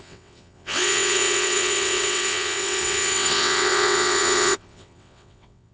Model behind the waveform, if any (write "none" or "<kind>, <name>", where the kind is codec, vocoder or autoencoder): vocoder, WaveNeXt